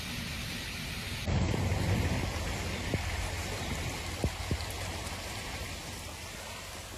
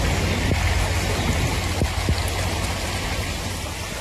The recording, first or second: second